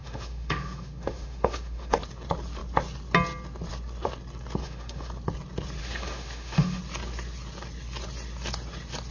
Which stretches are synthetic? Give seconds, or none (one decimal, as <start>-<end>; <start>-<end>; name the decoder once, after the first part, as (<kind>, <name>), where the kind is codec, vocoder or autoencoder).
0.0-2.0 (autoencoder, DAC-VAE); 4.6-5.1; 5.8-6.8